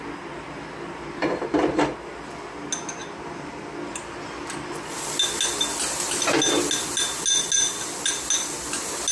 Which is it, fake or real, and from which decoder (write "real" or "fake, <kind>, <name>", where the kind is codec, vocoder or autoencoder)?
real